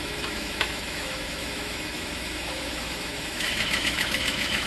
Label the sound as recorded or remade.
remade